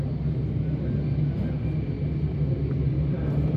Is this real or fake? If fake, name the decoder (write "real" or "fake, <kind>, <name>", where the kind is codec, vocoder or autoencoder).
real